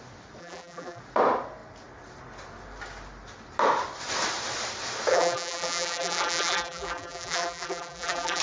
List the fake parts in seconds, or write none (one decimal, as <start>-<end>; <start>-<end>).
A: 0.4-1.0; 5.1-8.4